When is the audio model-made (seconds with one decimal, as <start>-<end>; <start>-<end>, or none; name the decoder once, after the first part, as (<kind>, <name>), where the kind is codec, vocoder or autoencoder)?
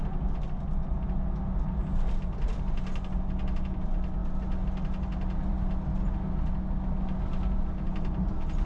none